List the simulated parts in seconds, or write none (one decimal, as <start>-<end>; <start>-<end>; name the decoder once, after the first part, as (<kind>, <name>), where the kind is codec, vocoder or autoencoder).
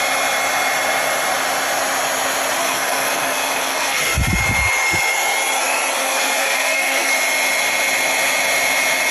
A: 2.6-4.0 (codec, SNAC); 6.0-7.1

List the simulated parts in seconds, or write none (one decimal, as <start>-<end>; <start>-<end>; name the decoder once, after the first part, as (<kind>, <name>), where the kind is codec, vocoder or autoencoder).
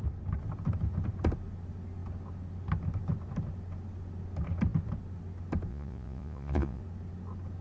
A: 5.7-6.8 (vocoder, Vocos)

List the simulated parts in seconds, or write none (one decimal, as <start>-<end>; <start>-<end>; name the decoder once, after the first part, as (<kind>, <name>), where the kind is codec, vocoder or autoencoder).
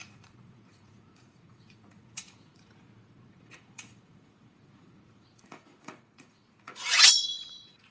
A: 0.0-7.9 (vocoder, Vocos)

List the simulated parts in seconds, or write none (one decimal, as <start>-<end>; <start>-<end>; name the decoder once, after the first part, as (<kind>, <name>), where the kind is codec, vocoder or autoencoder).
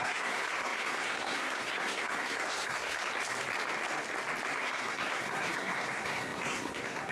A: 0.0-3.0 (codec, SNAC); 4.6-7.1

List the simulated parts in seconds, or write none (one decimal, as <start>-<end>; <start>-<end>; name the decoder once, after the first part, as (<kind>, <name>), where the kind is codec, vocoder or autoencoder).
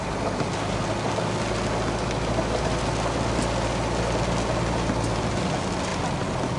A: none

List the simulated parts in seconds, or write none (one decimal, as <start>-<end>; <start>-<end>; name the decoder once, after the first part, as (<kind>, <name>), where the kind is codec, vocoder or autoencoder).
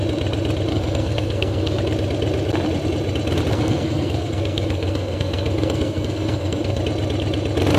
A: 0.7-1.8 (codec, SNAC); 3.5-6.8